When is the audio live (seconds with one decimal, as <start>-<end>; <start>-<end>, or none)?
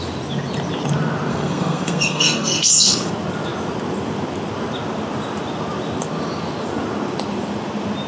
0.0-1.3; 3.1-8.1